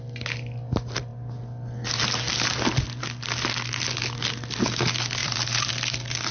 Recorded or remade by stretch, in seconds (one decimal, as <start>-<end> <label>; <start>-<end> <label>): 0.0-5.2 recorded; 5.2-5.7 remade; 5.7-6.3 recorded